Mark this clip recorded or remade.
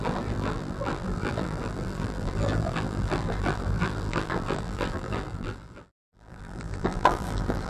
remade